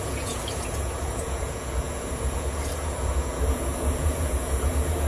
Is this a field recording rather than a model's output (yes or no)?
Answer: no